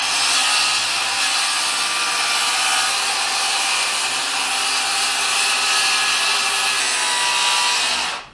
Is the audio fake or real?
real